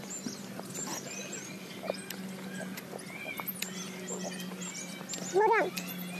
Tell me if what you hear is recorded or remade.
recorded